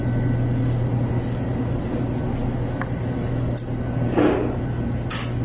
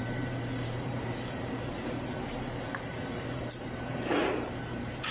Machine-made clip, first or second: second